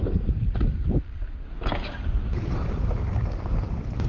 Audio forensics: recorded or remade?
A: remade